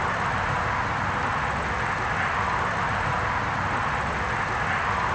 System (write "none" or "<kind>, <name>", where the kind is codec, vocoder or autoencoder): none